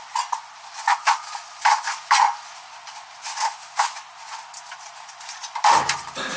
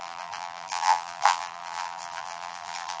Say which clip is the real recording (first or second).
first